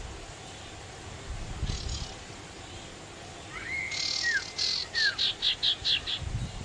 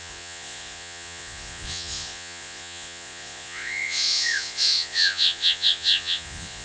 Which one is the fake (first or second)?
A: second